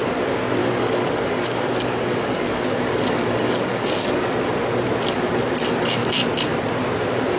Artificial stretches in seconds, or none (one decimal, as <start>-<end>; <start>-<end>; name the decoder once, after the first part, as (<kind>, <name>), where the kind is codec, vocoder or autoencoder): 0.6-4.3 (codec, DAC)